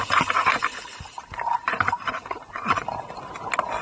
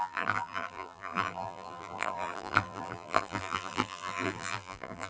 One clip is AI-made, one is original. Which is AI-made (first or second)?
second